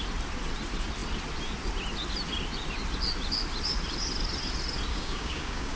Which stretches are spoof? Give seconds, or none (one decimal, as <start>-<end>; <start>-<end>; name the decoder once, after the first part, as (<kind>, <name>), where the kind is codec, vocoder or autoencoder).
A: 4.9-5.8 (codec, DAC)